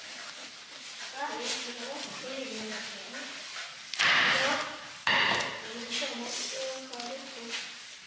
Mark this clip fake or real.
real